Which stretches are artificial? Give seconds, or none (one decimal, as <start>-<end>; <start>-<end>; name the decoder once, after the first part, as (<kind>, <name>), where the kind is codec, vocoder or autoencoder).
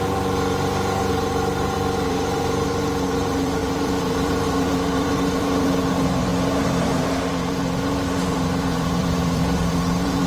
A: 1.1-6.3 (vocoder, BigVGAN v2); 6.9-10.3